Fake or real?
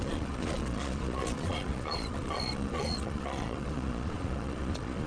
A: fake